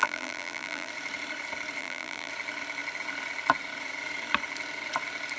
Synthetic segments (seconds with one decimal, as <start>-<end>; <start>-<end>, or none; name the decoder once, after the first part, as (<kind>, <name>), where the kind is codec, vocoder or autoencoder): 0.0-0.9 (vocoder, BigVGAN v2); 1.8-2.3